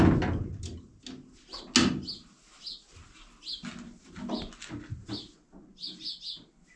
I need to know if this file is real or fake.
real